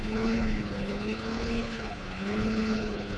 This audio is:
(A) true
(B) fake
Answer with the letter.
B